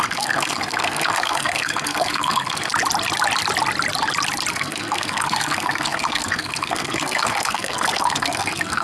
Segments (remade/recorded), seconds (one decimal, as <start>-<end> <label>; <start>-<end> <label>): 0.0-2.7 remade; 2.7-4.5 recorded; 4.5-8.8 remade